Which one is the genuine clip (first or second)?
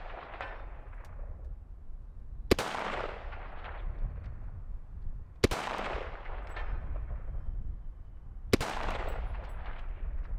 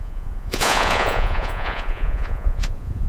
first